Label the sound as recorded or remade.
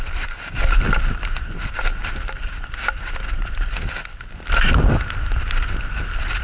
recorded